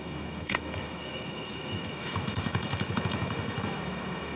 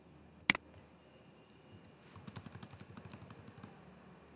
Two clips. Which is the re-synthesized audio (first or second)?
first